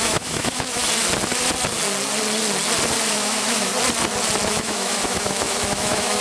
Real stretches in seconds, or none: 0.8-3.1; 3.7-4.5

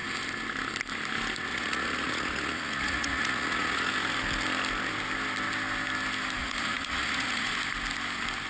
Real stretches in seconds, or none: 0.0-1.5; 3.9-6.4; 7.5-8.5

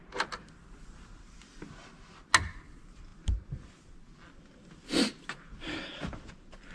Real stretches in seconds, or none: 0.0-6.7

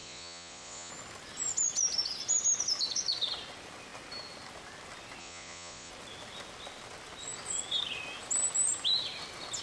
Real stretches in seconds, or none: 0.9-5.2; 5.9-9.6